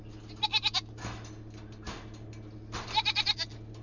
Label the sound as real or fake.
real